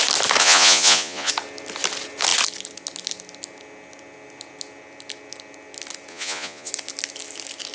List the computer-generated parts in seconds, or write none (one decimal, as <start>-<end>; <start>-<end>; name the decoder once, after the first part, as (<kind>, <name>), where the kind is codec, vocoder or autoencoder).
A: 0.4-1.3 (vocoder, Vocos); 6.1-6.7